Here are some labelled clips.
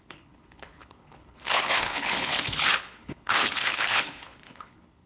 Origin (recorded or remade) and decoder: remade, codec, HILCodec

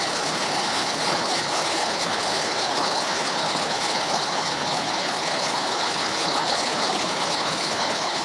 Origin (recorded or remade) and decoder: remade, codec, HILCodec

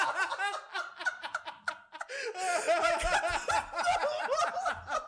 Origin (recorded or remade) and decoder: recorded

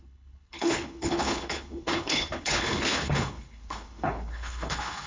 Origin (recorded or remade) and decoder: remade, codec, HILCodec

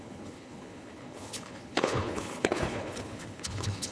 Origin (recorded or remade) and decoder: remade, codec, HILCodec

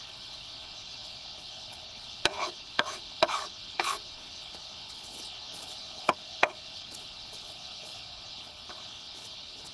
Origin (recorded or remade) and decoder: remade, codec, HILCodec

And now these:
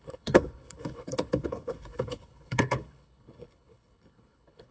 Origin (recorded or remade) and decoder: remade, codec, HILCodec